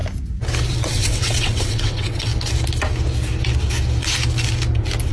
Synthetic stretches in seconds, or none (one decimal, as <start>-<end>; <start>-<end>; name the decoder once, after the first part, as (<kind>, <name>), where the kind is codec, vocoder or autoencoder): 0.7-2.3 (vocoder, WaveNeXt)

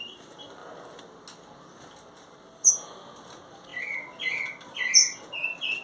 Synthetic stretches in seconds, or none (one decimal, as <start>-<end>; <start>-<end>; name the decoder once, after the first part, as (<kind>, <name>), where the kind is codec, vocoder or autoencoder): none